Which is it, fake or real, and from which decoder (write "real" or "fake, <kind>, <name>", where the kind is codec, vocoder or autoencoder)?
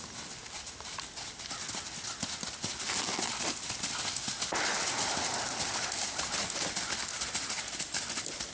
real